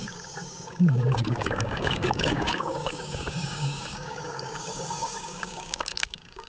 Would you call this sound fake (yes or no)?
yes